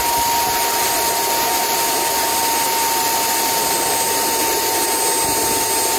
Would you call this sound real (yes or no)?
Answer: yes